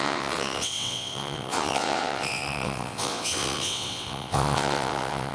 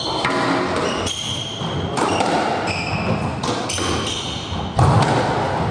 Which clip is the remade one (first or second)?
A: first